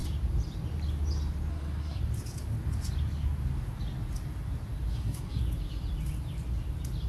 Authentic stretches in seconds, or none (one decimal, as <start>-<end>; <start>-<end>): 0.0-1.5; 2.0-4.9; 5.4-7.1